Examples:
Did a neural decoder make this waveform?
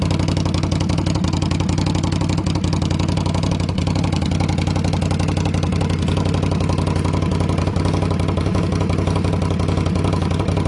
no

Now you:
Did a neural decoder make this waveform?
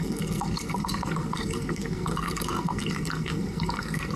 yes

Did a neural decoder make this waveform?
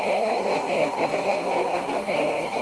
yes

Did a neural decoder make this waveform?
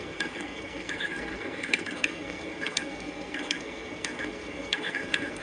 yes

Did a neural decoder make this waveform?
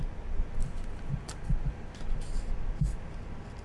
no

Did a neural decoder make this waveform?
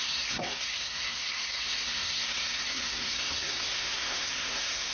yes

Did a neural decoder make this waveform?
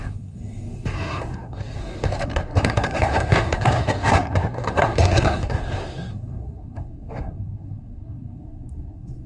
yes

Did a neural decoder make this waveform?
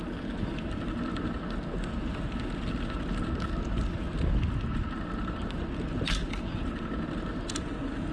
no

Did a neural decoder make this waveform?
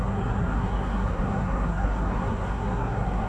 yes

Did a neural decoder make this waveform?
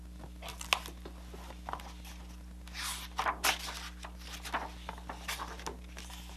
no